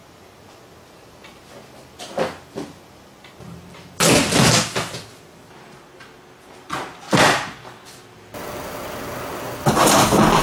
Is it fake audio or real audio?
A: real